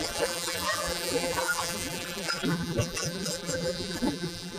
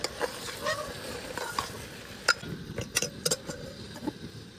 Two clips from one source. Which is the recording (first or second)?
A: second